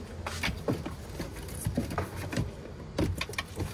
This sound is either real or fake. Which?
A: real